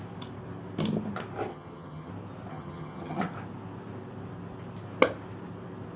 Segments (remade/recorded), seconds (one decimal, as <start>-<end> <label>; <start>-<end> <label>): 0.0-1.5 recorded; 1.5-2.1 remade; 2.1-2.5 recorded; 2.5-3.2 remade; 3.2-6.0 recorded